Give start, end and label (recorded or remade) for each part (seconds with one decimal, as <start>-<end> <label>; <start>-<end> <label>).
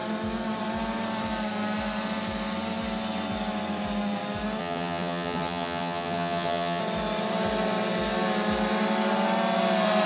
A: 0.0-4.6 recorded; 4.6-6.8 remade; 6.8-10.1 recorded